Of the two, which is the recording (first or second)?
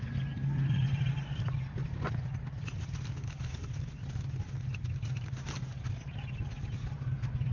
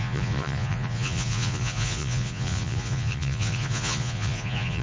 first